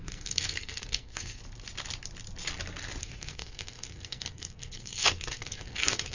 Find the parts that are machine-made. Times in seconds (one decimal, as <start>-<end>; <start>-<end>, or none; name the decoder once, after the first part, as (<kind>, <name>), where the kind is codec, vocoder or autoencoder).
0.0-1.4 (codec, SNAC); 3.0-6.1